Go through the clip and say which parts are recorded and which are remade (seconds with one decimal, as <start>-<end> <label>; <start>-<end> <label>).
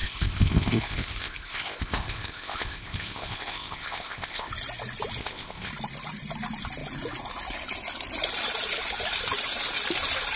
0.0-4.5 remade; 4.5-5.2 recorded; 5.2-5.7 remade; 5.7-10.4 recorded